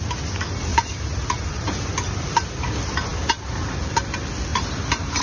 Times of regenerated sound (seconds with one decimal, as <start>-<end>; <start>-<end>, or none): 0.7-1.9; 4.5-5.2